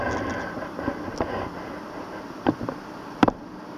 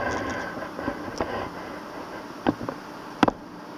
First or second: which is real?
second